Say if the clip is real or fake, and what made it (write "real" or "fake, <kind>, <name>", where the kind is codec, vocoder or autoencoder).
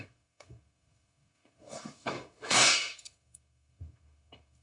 fake, codec, SNAC